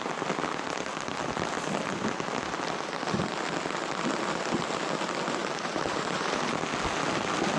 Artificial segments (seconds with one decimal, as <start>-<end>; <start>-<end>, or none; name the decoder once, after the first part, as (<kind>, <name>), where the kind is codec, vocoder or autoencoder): 5.4-6.4 (vocoder, BigVGAN v2)